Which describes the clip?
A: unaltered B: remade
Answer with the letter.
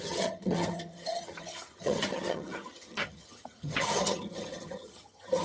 B